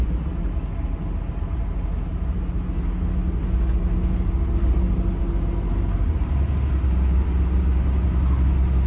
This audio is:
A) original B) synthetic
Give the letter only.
A